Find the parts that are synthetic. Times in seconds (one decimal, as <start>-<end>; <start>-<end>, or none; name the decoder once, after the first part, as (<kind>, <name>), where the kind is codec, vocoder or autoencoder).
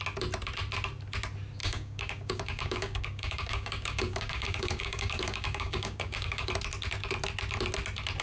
1.6-6.5 (codec, DAC)